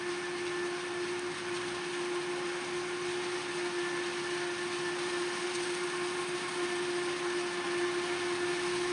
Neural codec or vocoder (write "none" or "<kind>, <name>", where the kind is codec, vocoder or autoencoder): none